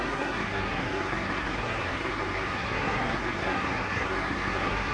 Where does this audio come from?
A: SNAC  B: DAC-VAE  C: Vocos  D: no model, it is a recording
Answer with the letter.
A